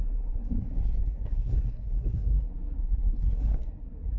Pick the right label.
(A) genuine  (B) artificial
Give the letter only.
B